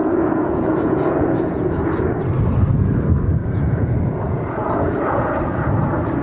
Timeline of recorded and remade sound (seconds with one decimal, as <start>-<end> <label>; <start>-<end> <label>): 0.0-1.7 remade; 1.7-3.4 recorded; 3.4-5.7 remade; 5.7-6.2 recorded